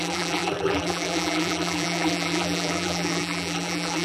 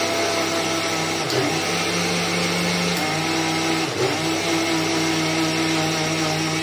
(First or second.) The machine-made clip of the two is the first